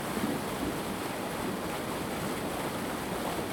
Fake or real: real